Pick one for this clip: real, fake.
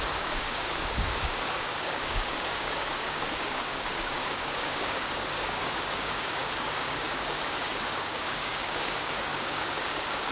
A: fake